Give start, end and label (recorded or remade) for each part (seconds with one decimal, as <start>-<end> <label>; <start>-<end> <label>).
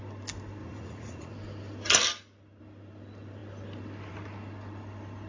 0.0-0.6 recorded; 0.6-1.3 remade; 1.3-5.3 recorded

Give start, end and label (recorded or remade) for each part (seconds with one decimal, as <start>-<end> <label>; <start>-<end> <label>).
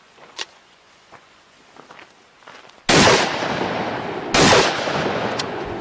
0.0-1.6 remade; 1.6-4.7 recorded; 4.7-5.8 remade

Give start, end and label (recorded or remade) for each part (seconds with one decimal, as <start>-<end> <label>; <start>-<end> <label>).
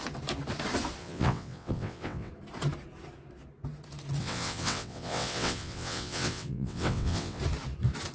0.0-1.0 recorded; 1.0-2.3 remade; 2.3-4.2 recorded; 4.2-7.4 remade; 7.4-8.1 recorded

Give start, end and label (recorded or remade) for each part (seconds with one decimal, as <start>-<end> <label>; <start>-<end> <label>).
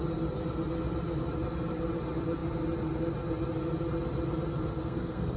0.0-4.8 recorded; 4.8-5.4 remade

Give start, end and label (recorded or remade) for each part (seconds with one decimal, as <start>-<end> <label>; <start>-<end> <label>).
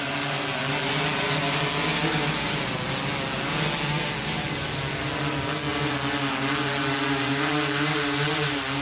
0.0-8.8 recorded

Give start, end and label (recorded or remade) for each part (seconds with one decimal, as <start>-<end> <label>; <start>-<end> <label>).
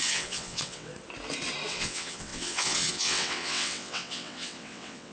0.0-0.9 remade; 0.9-1.7 recorded; 1.7-5.1 remade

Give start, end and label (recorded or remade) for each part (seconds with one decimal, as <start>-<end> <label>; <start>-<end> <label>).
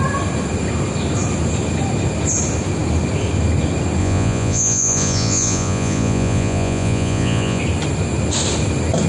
0.0-4.0 recorded; 4.0-7.6 remade; 7.6-9.1 recorded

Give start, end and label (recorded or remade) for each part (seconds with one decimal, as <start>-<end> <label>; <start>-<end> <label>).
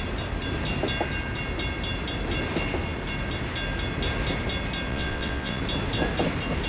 0.0-4.9 recorded; 4.9-5.6 remade; 5.6-6.7 recorded